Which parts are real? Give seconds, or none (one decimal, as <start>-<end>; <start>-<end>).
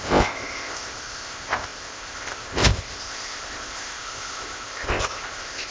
none